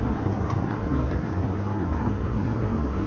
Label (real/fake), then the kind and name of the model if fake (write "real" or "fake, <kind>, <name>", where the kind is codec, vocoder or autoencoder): fake, codec, SNAC